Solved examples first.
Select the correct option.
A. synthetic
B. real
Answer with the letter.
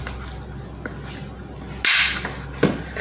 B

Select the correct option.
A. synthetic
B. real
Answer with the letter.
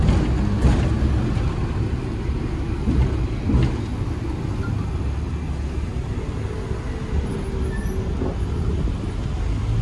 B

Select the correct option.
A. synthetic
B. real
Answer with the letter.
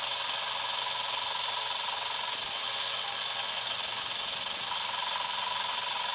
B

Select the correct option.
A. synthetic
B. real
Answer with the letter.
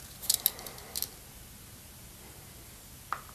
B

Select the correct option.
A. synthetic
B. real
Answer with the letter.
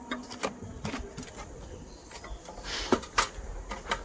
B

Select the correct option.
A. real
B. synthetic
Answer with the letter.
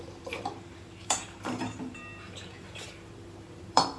B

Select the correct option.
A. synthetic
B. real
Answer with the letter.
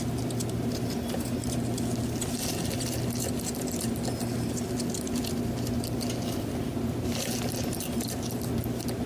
B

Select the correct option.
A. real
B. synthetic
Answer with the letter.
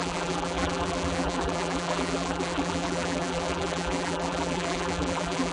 B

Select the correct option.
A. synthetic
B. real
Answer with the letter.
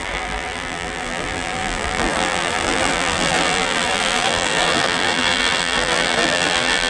A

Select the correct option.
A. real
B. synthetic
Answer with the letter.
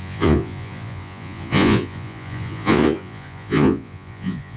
B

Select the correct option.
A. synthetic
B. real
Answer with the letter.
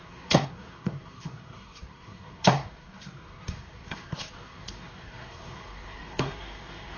A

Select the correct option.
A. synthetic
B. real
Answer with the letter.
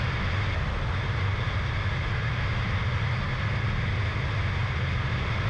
B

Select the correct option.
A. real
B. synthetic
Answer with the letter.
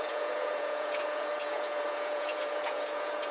B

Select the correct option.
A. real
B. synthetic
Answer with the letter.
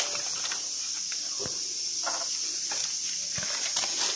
A